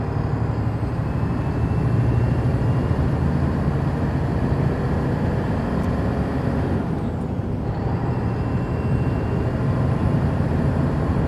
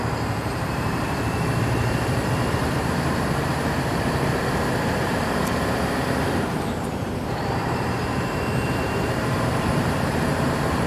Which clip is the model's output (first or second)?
second